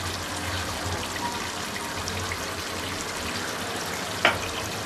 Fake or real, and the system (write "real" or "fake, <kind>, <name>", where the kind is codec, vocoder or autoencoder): real